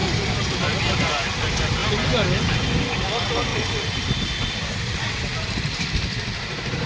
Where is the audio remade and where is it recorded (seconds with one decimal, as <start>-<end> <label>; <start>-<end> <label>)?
0.0-0.8 remade; 0.8-3.5 recorded; 3.5-6.9 remade